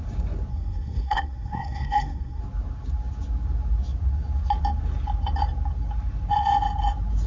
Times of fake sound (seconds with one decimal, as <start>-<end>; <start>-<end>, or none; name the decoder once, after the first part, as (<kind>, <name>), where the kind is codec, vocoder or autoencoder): 0.5-2.4 (codec, SNAC)